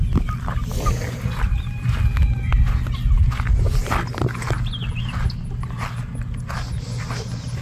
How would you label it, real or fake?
real